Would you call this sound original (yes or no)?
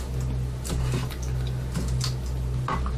yes